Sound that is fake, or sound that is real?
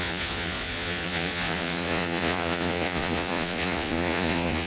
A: fake